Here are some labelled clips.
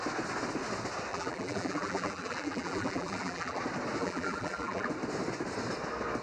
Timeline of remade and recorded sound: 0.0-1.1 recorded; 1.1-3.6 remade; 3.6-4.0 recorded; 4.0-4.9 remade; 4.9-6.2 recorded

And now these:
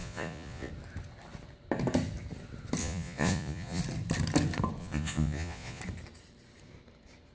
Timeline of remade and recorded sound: 0.0-0.7 remade; 0.7-2.8 recorded; 2.8-3.8 remade; 3.8-4.8 recorded; 4.8-5.8 remade; 5.8-7.3 recorded

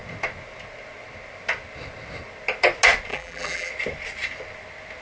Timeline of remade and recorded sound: 0.0-3.1 recorded; 3.1-3.7 remade; 3.7-5.0 recorded